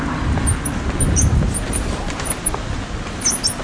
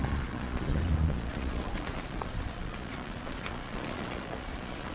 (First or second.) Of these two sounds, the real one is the first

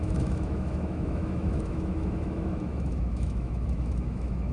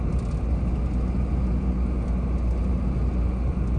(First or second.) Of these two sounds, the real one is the second